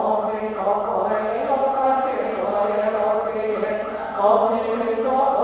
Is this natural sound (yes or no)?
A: no